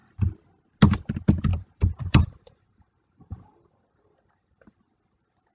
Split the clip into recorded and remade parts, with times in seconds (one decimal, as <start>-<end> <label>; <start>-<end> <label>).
0.0-1.5 recorded; 1.5-4.8 remade; 4.8-5.5 recorded